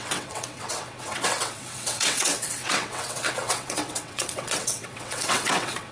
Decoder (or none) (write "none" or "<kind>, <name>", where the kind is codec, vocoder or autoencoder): vocoder, WaveNeXt